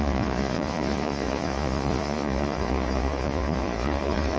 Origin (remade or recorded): remade